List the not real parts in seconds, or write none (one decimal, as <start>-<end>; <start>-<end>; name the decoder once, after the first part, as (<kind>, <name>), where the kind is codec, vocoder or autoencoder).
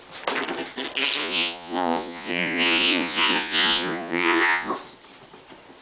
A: 1.2-4.7 (vocoder, Vocos)